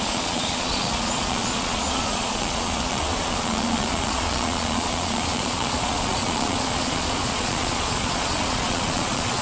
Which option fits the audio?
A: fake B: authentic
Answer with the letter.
A